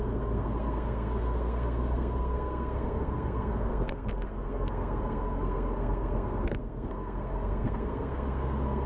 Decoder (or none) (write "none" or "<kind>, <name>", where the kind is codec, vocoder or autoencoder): codec, SNAC